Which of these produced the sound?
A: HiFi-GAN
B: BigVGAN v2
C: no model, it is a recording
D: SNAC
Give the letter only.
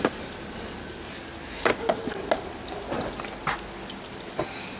C